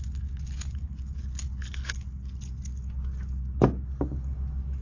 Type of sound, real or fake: real